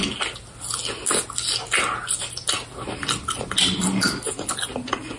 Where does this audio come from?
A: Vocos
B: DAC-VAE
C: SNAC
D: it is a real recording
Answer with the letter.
D